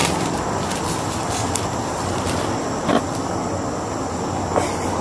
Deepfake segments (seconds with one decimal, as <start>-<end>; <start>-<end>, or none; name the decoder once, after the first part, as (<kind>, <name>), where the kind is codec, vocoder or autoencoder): 0.0-2.9 (vocoder, BigVGAN v2)